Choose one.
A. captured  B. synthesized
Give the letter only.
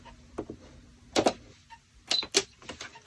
A